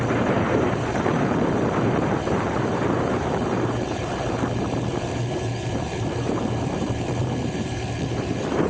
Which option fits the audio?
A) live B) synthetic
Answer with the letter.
B